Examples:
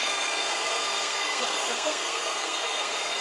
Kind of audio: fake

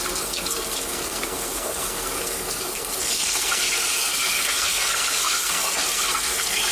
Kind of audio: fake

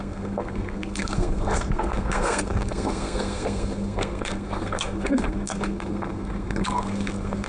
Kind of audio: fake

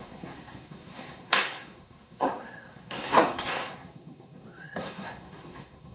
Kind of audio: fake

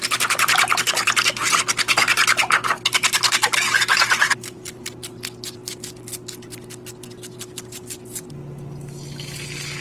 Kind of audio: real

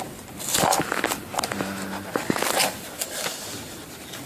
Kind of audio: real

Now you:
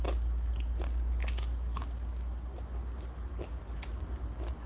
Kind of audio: real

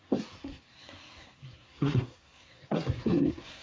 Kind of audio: fake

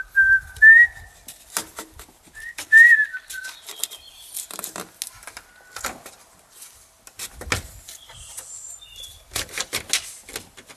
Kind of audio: real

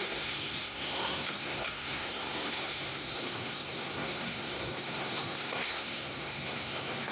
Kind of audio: fake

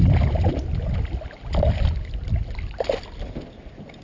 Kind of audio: real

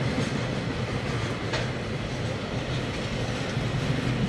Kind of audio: real